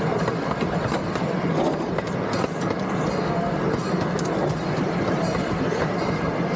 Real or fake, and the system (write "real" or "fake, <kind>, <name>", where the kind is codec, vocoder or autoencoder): real